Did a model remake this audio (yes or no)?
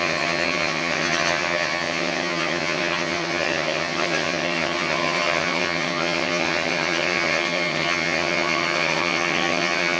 yes